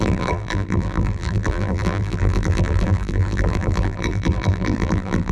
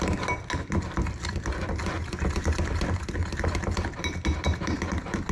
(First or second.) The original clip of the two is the second